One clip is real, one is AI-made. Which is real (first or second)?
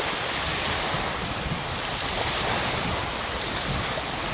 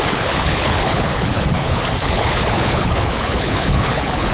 first